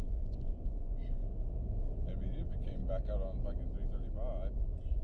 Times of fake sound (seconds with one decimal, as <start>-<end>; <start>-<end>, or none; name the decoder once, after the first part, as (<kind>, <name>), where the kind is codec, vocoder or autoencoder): 0.0-1.2 (vocoder, Vocos); 2.3-2.8; 4.6-5.0